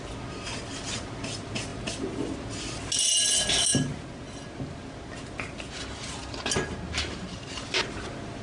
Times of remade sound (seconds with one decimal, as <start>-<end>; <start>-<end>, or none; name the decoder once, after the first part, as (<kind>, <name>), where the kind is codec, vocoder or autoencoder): none